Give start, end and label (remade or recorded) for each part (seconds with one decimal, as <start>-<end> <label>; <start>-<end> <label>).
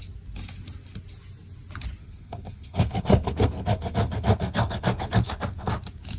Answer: 0.0-2.0 recorded; 2.0-5.7 remade; 5.7-6.2 recorded